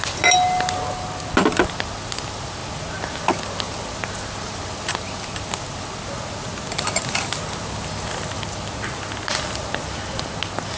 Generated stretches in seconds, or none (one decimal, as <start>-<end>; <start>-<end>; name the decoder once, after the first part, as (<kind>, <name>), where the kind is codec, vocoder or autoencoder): none